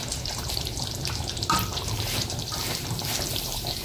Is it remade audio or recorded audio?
remade